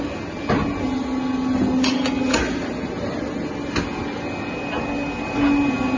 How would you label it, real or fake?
real